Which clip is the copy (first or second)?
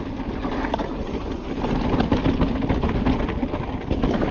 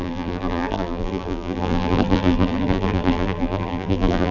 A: second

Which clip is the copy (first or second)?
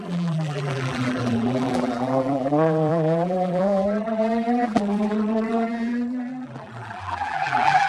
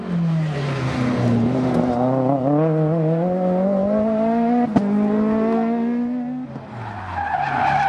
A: first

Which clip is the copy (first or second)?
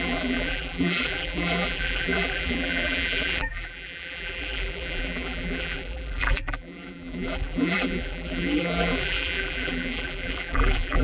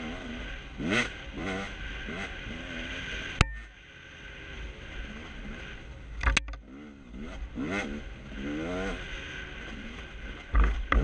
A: first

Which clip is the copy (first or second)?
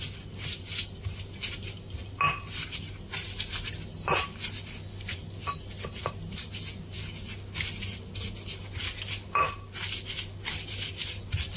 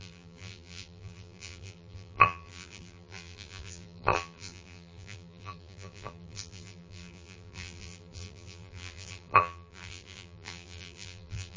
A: second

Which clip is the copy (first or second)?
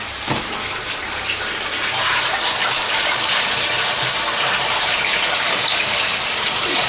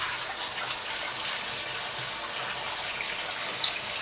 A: first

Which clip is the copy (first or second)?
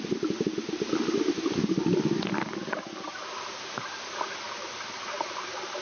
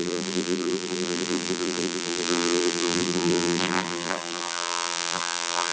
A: second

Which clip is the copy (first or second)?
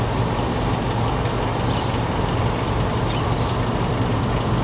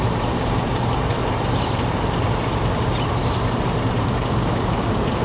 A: second